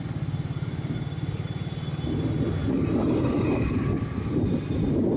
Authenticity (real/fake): real